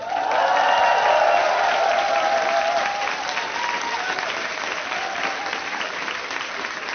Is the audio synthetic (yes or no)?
no